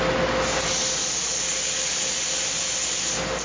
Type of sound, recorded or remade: recorded